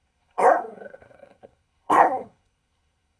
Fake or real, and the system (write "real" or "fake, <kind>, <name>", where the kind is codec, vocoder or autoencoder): fake, codec, SNAC